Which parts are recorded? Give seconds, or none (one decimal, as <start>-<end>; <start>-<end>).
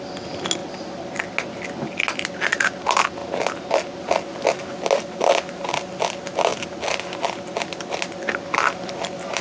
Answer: 0.0-9.4